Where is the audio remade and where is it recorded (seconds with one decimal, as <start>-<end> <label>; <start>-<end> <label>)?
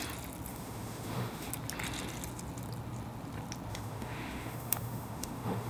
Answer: 0.0-0.5 recorded; 0.5-1.5 remade; 1.5-3.7 recorded; 3.7-5.7 remade